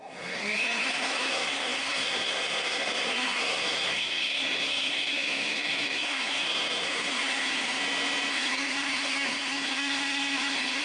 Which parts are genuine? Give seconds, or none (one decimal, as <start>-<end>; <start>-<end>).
7.8-8.3